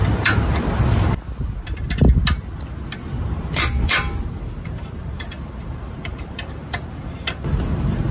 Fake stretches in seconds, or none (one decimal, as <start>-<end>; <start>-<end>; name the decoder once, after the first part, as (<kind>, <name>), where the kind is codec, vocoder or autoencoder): 3.1-6.7 (vocoder, BigVGAN v2)